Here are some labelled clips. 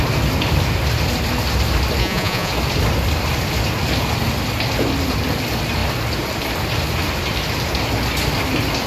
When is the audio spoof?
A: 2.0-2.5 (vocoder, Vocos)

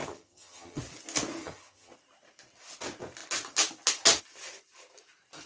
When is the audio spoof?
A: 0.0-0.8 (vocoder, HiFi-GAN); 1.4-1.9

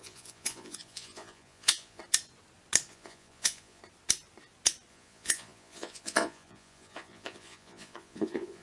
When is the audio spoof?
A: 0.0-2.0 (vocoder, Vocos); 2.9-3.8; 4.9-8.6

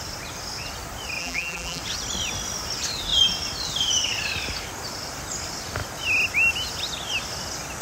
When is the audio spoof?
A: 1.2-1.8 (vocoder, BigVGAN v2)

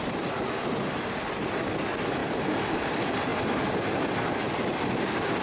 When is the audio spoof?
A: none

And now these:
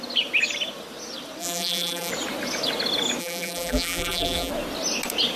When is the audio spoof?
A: 1.4-2.1 (vocoder, BigVGAN v2); 3.2-4.5

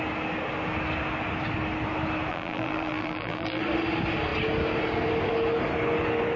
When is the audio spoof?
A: 2.3-3.6 (vocoder, BigVGAN v2)